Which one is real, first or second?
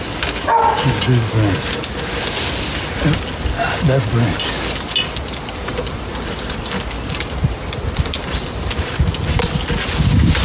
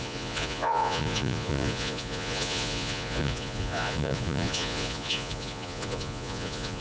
first